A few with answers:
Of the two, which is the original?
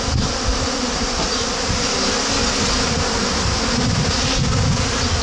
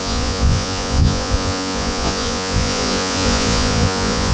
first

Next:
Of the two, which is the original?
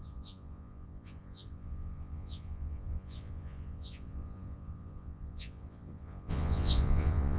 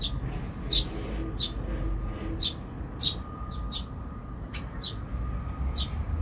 second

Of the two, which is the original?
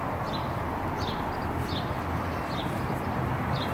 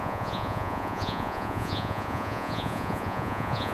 first